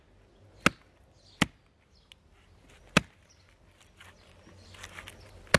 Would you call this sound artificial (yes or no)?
no